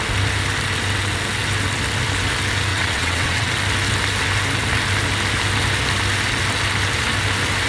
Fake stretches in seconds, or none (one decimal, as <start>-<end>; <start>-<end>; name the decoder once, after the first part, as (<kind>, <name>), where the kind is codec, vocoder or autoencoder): 2.7-3.5 (vocoder, WaveNeXt)